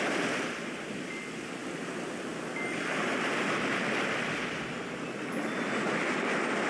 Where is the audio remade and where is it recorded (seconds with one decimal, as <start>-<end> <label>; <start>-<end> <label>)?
0.0-6.7 recorded